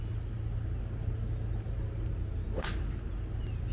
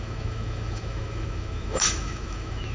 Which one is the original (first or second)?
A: first